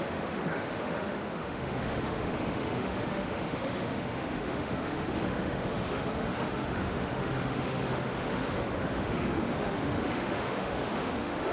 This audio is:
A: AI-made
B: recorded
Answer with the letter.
A